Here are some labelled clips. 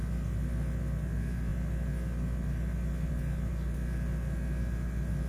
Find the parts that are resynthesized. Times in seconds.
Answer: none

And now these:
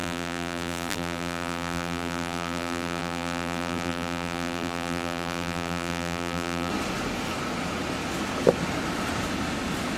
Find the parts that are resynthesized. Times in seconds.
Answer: 0.0-6.7

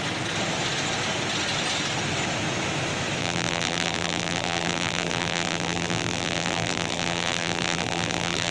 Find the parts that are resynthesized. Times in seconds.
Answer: 3.2-8.5